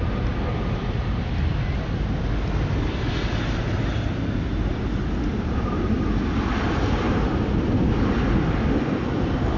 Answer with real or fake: real